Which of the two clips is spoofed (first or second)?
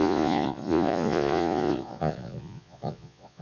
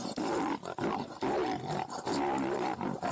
first